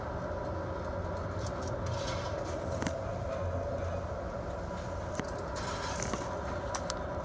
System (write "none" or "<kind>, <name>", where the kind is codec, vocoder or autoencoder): none